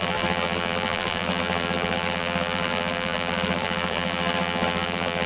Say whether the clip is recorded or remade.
remade